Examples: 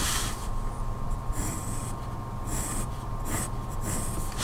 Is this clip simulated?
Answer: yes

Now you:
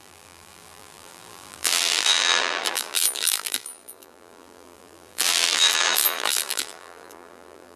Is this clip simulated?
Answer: yes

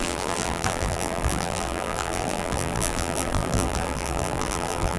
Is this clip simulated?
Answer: yes